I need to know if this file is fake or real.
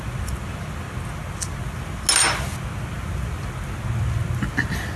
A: real